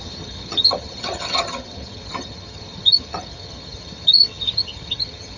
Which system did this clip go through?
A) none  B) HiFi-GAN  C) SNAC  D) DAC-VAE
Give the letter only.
B